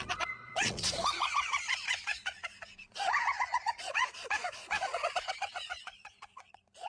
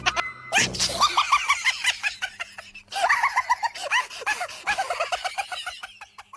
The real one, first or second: second